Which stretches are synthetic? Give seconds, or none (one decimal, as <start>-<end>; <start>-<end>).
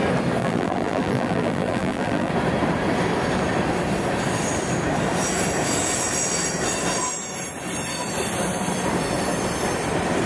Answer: 0.4-2.3